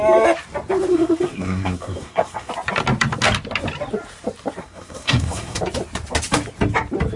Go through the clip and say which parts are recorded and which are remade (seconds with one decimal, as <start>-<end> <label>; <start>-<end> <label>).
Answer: 0.0-0.9 recorded; 0.9-2.5 remade; 2.5-4.6 recorded; 4.6-5.6 remade; 5.6-7.2 recorded